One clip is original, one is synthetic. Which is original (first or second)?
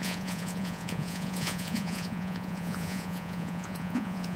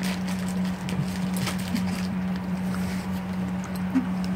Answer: second